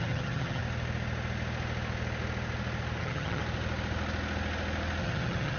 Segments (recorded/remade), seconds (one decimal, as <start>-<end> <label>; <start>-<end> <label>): 0.0-0.6 remade; 0.6-3.0 recorded; 3.0-3.4 remade; 3.4-5.0 recorded; 5.0-5.6 remade